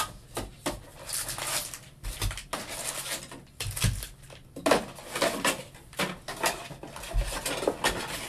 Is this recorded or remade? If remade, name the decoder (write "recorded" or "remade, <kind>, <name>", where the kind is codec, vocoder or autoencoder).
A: recorded